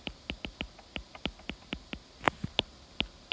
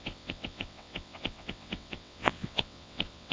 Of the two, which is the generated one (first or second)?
second